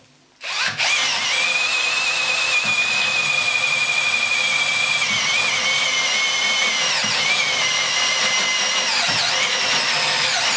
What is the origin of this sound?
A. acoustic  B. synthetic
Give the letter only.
A